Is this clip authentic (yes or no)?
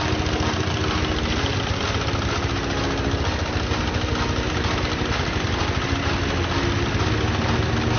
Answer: yes